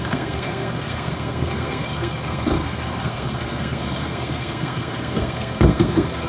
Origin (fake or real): fake